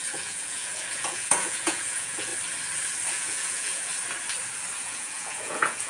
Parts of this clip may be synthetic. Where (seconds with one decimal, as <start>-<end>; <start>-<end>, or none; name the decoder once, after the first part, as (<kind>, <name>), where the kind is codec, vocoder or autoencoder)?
0.0-2.3 (vocoder, Vocos); 3.1-3.9; 4.8-5.9

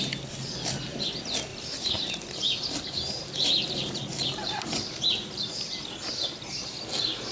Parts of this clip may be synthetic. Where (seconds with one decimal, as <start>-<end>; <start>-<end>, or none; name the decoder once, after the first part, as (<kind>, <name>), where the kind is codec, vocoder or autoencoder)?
1.5-5.9 (vocoder, BigVGAN v2)

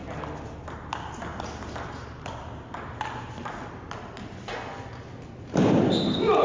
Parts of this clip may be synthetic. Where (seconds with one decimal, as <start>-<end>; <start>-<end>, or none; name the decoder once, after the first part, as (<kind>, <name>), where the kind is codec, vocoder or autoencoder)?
none

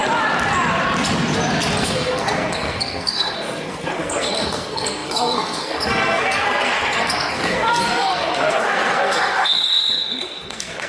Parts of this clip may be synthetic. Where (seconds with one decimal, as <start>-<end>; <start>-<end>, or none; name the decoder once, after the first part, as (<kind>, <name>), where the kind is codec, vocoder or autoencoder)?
1.8-10.9 (codec, SNAC)

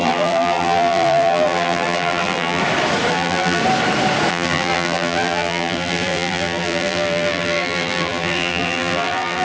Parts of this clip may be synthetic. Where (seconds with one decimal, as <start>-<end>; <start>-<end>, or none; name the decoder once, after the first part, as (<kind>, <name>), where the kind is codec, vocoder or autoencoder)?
0.0-2.6 (vocoder, BigVGAN v2); 3.1-3.6; 4.3-9.4

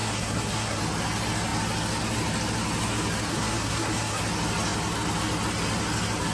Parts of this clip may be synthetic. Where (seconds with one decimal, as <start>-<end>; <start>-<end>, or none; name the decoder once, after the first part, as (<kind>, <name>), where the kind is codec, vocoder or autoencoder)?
0.0-0.8 (codec, SNAC); 3.3-4.2

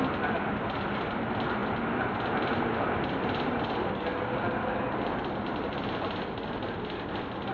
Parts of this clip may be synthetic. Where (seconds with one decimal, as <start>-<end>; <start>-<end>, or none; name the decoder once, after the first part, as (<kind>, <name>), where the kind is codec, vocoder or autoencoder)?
none